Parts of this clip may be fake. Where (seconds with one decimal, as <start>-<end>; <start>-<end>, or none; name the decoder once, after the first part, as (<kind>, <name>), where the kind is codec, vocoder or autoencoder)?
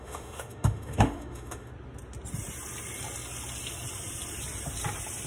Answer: 0.0-1.7 (autoencoder, DAC-VAE)